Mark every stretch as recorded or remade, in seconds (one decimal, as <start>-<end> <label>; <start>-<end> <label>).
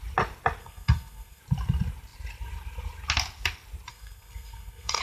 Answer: 0.0-0.6 recorded; 0.6-1.4 remade; 1.4-3.9 recorded; 3.9-5.0 remade